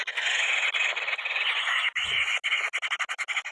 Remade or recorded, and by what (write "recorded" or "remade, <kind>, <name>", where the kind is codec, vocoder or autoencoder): recorded